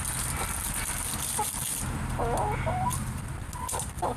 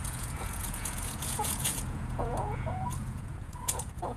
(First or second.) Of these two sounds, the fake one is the second